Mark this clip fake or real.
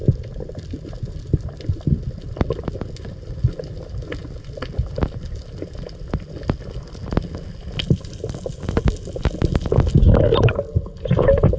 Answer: real